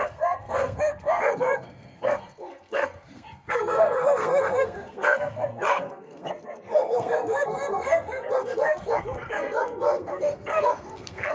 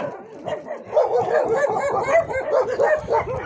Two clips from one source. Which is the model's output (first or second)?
first